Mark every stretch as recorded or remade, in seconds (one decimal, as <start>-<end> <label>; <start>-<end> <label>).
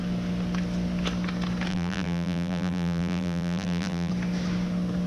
0.0-1.7 recorded; 1.7-4.1 remade; 4.1-5.1 recorded